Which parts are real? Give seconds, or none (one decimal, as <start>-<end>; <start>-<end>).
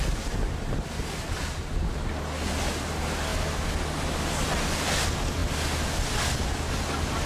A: 0.0-7.3